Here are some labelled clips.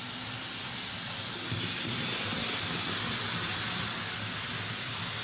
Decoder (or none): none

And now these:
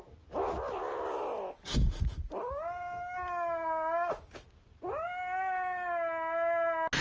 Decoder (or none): none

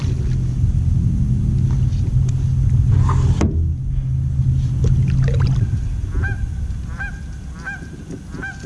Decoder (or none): none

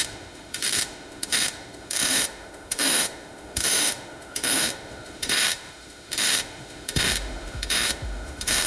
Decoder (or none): autoencoder, DAC-VAE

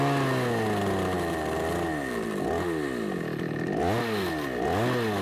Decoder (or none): none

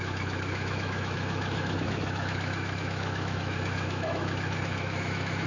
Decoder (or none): autoencoder, DAC-VAE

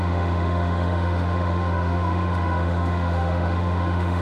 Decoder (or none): autoencoder, DAC-VAE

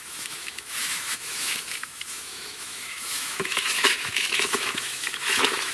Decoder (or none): autoencoder, DAC-VAE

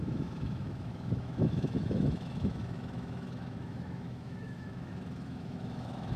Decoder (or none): autoencoder, DAC-VAE